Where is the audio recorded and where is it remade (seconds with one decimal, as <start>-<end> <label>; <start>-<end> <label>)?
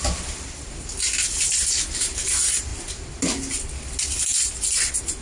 0.0-5.2 recorded